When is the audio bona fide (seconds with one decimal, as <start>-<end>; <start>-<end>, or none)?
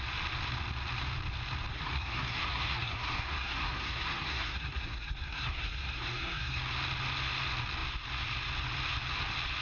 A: 0.0-1.7; 6.6-9.6